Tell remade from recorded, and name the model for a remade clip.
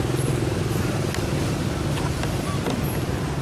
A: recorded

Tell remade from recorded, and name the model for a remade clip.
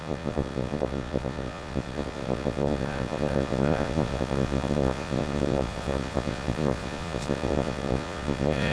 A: remade, vocoder, Vocos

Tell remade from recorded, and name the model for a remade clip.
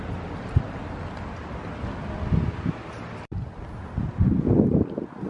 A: recorded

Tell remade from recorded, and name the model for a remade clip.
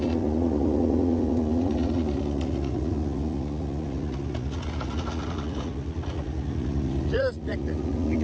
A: remade, vocoder, Vocos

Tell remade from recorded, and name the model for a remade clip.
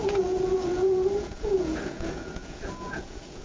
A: remade, vocoder, Vocos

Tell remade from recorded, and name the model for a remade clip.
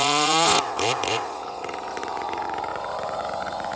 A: remade, vocoder, Vocos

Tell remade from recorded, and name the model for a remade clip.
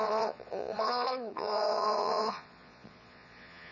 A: remade, vocoder, Vocos